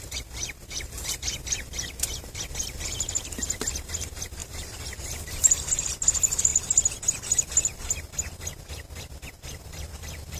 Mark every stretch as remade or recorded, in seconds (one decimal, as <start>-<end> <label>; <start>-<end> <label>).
0.0-4.4 recorded; 4.4-5.8 remade; 5.8-10.4 recorded